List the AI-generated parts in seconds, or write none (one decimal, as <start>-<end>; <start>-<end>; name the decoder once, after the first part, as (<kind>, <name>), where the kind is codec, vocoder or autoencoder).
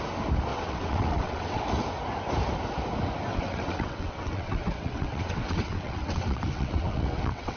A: 0.5-1.6 (vocoder, WaveNeXt); 3.3-7.6